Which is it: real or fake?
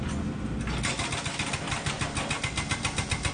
real